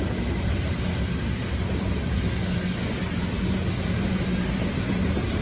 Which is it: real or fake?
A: real